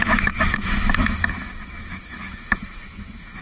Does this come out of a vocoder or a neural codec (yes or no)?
yes